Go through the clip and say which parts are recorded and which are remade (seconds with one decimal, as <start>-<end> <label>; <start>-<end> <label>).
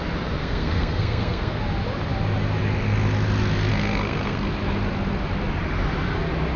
0.0-0.4 recorded; 0.4-1.6 remade; 1.6-3.7 recorded; 3.7-4.5 remade; 4.5-6.6 recorded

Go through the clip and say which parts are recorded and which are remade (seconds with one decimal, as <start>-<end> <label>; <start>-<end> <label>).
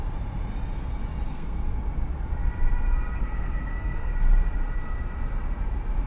0.0-1.3 recorded; 1.3-1.8 remade; 1.8-3.2 recorded; 3.2-4.1 remade; 4.1-6.1 recorded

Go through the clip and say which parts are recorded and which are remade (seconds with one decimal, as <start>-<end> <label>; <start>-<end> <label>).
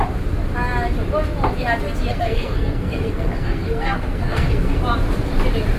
0.0-2.1 recorded; 2.1-4.8 remade; 4.8-5.8 recorded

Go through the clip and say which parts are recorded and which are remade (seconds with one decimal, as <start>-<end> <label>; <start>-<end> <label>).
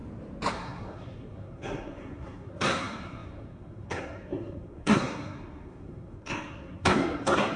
0.0-0.5 recorded; 0.5-7.6 remade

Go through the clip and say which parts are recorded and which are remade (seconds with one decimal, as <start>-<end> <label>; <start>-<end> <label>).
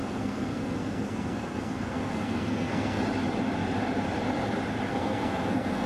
0.0-3.0 remade; 3.0-4.9 recorded; 4.9-5.9 remade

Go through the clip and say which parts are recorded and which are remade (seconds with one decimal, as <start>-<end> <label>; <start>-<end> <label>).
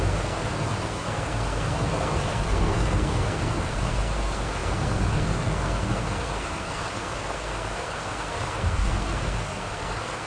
0.0-10.3 remade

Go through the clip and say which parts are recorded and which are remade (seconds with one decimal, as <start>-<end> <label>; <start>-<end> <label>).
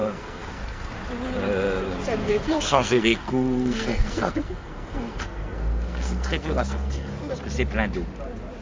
0.0-0.9 remade; 0.9-2.2 recorded; 2.2-7.1 remade; 7.1-8.6 recorded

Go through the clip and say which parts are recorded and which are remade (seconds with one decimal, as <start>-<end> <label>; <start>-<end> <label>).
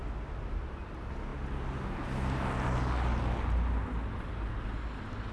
0.0-5.3 recorded